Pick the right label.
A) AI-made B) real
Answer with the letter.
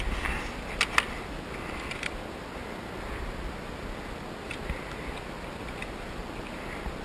B